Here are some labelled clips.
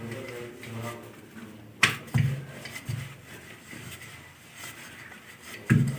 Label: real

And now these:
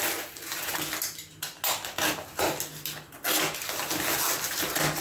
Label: real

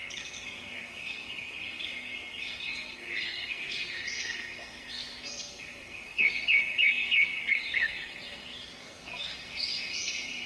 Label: fake